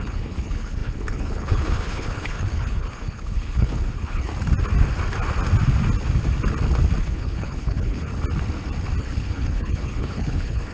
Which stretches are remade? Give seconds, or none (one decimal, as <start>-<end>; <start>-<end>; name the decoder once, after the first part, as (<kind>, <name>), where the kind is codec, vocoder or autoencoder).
0.0-4.3 (codec, HILCodec); 7.0-8.1; 9.0-10.7